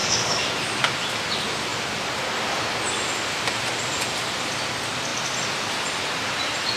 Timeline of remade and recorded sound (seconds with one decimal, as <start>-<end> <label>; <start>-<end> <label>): 0.0-0.5 remade; 0.5-6.8 recorded